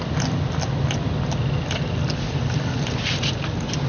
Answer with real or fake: real